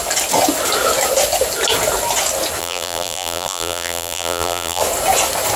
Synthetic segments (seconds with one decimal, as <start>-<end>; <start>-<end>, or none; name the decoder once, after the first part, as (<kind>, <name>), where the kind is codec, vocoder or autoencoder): 2.6-4.8 (vocoder, BigVGAN v2)